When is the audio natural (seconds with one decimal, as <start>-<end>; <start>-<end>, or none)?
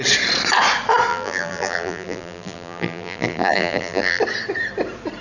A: 0.0-1.1; 4.2-5.2